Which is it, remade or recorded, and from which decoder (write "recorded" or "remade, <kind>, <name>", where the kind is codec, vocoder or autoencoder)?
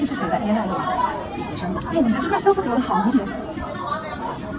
recorded